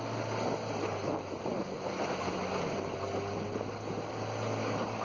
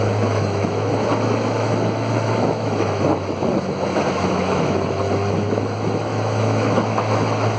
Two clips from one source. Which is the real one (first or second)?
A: first